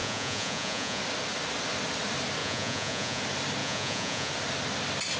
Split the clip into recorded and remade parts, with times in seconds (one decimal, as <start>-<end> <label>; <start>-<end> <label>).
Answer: 0.0-1.0 remade; 1.0-2.4 recorded; 2.4-3.2 remade; 3.2-3.6 recorded; 3.6-4.3 remade; 4.3-5.2 recorded